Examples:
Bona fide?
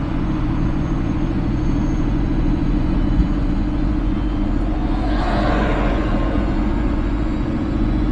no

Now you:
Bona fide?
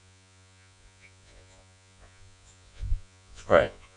no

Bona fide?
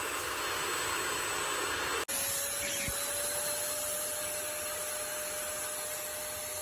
yes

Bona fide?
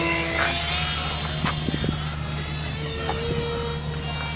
yes